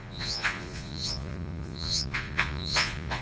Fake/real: fake